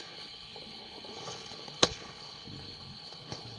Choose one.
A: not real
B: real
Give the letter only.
A